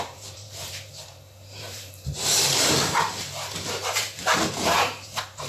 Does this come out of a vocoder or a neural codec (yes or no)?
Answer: yes